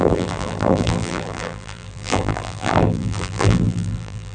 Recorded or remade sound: remade